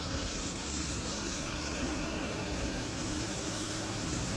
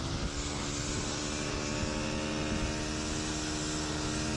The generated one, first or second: first